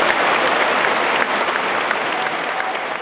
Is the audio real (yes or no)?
yes